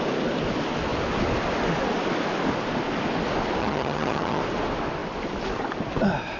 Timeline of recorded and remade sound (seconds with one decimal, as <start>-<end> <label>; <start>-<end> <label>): 0.0-3.6 recorded; 3.6-4.4 remade; 4.4-6.4 recorded